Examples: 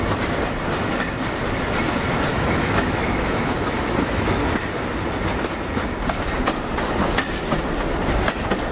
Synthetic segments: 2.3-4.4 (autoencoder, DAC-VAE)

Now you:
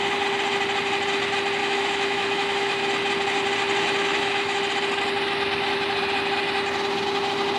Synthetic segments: 1.6-2.8 (autoencoder, DAC-VAE); 4.0-4.6

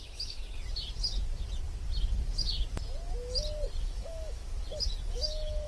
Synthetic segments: 0.0-0.4 (autoencoder, DAC-VAE); 3.8-4.4; 5.1-5.7

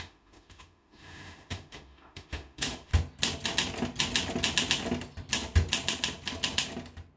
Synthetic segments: 0.0-2.9 (autoencoder, DAC-VAE)

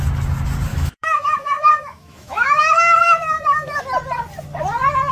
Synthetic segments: 0.7-3.8 (autoencoder, DAC-VAE)